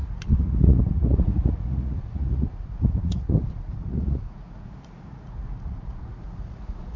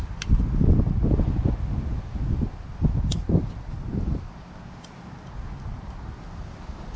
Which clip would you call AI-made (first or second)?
first